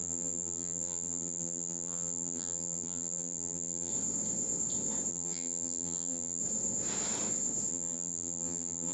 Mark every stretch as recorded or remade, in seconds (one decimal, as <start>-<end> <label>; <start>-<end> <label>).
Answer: 0.0-3.9 remade; 3.9-5.1 recorded; 5.1-6.4 remade; 6.4-7.7 recorded; 7.7-8.9 remade